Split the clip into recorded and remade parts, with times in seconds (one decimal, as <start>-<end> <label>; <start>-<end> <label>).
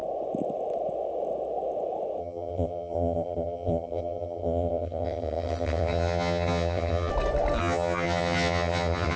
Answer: 0.0-2.2 recorded; 2.2-7.1 remade; 7.1-7.6 recorded; 7.6-9.2 remade